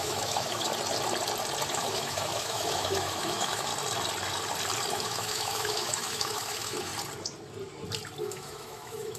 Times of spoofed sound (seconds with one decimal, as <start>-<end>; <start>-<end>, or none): 0.0-0.7; 1.7-3.7; 4.9-6.9; 8.2-9.2